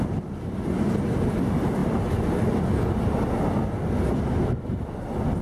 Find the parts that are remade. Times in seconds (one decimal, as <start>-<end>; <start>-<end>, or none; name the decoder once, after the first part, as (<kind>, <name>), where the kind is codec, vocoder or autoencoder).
none